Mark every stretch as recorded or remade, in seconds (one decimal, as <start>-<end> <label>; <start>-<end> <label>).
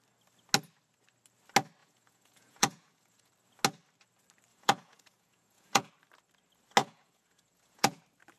0.0-1.8 recorded; 1.8-3.3 remade; 3.3-4.5 recorded; 4.5-5.9 remade; 5.9-6.8 recorded; 6.8-8.0 remade; 8.0-8.4 recorded